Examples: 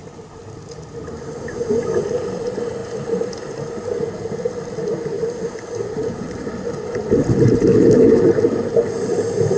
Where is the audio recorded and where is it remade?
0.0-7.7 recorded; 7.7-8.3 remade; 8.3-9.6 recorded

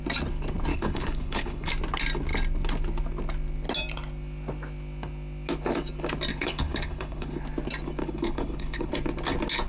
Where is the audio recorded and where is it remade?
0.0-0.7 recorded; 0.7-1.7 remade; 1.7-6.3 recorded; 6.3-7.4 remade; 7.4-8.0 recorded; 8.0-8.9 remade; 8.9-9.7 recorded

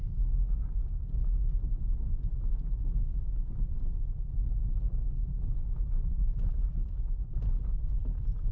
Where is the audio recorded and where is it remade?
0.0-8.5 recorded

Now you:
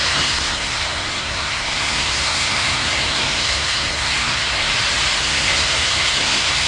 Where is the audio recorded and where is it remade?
0.0-4.7 remade; 4.7-5.2 recorded; 5.2-6.7 remade